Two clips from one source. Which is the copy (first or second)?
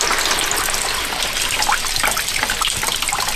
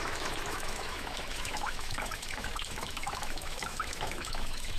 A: second